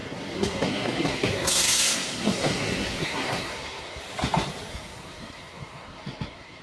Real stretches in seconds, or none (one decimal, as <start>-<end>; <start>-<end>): 4.0-4.7